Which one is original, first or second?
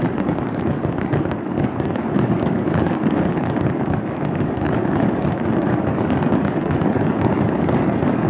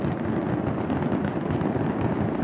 second